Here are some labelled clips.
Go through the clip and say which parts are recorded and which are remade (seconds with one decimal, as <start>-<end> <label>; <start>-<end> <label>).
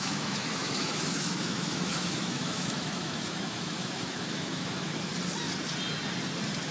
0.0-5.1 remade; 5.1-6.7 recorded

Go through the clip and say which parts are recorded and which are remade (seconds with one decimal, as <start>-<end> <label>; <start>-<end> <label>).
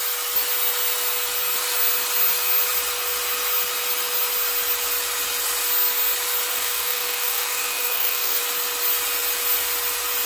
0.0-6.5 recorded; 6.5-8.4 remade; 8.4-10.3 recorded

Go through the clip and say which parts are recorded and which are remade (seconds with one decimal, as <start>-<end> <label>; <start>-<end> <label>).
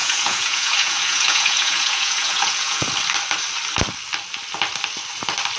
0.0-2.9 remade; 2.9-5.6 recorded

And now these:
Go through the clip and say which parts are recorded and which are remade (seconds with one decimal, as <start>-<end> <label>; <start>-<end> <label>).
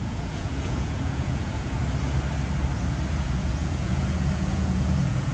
0.0-1.8 remade; 1.8-3.1 recorded; 3.1-5.3 remade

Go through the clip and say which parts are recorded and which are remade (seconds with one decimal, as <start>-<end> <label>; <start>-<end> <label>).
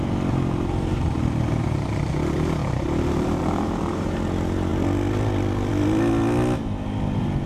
0.0-2.6 recorded; 2.6-4.2 remade; 4.2-7.5 recorded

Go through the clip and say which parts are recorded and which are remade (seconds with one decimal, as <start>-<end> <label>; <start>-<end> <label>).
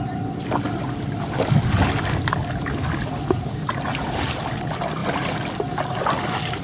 0.0-6.6 recorded